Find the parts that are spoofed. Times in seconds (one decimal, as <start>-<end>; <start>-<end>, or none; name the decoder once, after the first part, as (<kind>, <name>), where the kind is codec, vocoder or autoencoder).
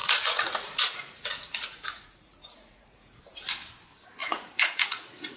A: 0.0-3.2 (vocoder, Vocos); 4.2-5.4